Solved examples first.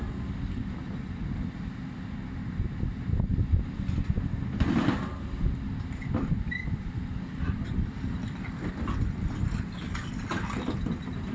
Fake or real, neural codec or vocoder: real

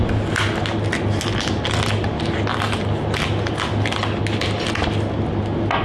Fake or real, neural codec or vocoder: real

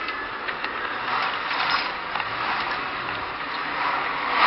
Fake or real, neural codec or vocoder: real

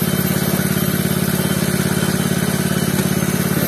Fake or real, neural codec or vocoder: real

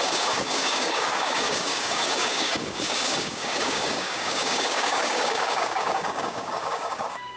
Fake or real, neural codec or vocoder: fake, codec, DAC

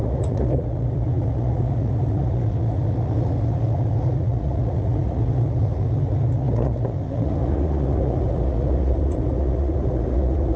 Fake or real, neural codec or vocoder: fake, vocoder, Vocos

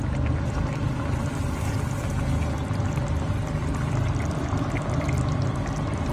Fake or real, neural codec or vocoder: real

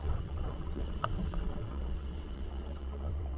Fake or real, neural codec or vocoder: fake, vocoder, WaveNeXt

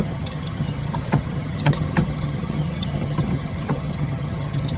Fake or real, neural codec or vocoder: fake, vocoder, HiFi-GAN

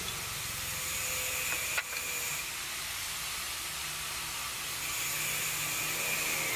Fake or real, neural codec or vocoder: real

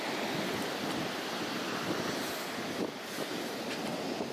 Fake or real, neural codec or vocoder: real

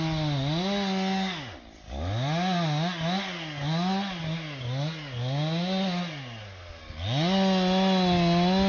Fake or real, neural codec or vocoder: real